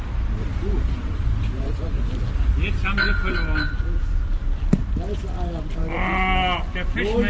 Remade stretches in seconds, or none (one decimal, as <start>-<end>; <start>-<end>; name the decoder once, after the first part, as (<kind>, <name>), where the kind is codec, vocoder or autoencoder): 0.5-2.2 (vocoder, BigVGAN v2)